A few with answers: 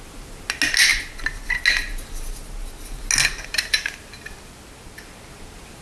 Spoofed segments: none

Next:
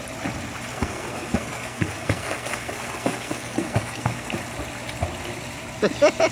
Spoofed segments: 0.7-4.3 (codec, SNAC)

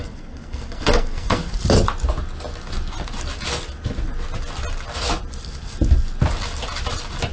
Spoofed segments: 0.0-1.5 (codec, SNAC)

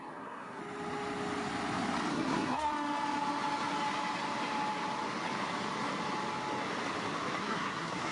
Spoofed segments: 0.0-0.6 (codec, SNAC); 2.1-2.7; 7.4-8.1

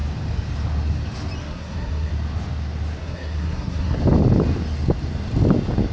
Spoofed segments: 1.4-2.1 (codec, SNAC); 3.0-4.0

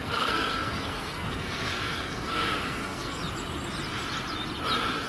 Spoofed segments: 0.0-3.2 (codec, SNAC)